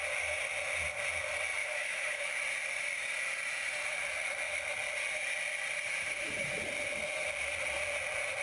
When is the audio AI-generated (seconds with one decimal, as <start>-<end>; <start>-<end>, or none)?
1.6-2.3